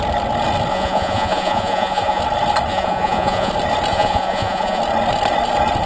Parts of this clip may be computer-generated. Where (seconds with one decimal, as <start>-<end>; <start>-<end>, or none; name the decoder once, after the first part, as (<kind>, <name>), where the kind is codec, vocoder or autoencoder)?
0.7-2.2 (vocoder, Vocos); 2.7-3.5; 3.9-4.8